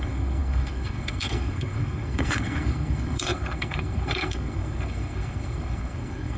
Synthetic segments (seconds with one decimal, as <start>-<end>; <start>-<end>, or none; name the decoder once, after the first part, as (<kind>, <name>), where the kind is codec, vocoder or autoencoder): 0.0-6.4 (codec, SNAC)